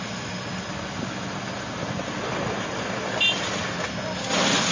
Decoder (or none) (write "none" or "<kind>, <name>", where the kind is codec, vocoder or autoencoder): none